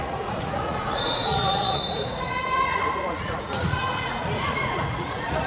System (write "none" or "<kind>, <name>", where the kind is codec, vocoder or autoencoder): vocoder, Vocos